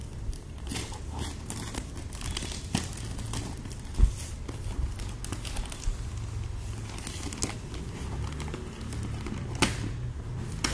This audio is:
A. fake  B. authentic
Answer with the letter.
B